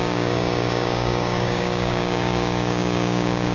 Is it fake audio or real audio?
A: fake